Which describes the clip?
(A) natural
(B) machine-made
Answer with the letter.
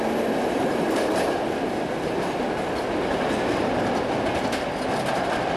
A